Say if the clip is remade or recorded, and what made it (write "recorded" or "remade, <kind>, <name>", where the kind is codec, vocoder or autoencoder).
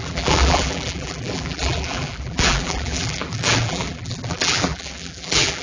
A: remade, vocoder, BigVGAN v2